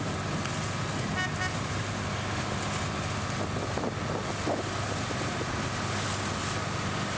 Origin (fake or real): real